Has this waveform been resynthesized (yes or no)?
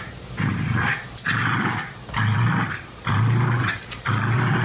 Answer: no